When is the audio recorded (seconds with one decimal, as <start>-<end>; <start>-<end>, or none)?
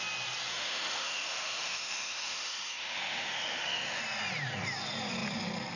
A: 0.0-0.5; 4.0-5.8